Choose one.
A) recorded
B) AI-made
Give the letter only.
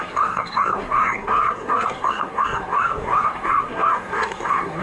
B